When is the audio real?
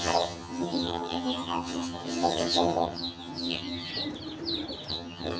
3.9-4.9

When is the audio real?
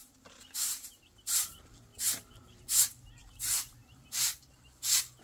1.4-1.9; 2.6-5.2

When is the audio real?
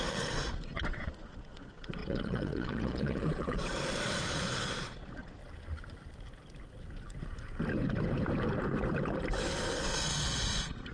5.4-9.6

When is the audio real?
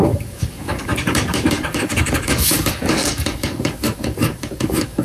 none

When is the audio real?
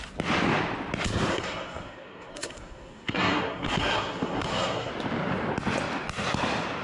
0.0-1.3; 4.9-6.8